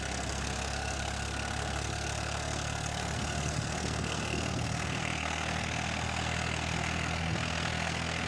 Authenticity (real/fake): fake